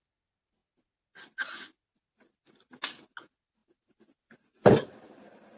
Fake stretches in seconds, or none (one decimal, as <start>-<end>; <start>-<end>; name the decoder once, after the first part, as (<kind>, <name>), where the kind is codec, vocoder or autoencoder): none